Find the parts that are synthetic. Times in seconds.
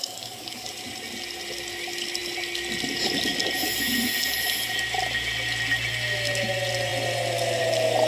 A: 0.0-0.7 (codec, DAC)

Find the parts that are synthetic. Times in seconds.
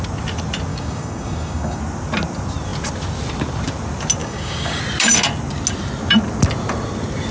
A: 0.7-1.8 (codec, DAC); 4.2-4.8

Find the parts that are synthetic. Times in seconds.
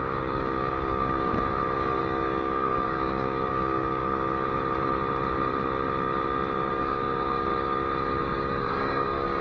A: 0.0-1.3 (codec, DAC); 2.0-4.0; 6.7-7.5; 8.2-9.4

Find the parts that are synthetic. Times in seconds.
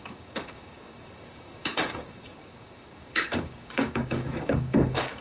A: 0.0-5.2 (codec, DAC)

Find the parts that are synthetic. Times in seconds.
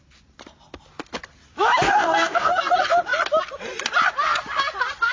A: 1.9-2.5 (codec, DAC)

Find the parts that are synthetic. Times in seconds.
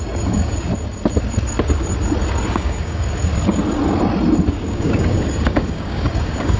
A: 0.0-0.7 (codec, DAC); 2.5-3.3; 4.5-6.6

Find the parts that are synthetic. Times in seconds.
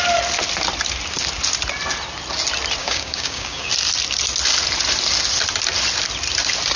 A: 2.8-3.7 (codec, DAC)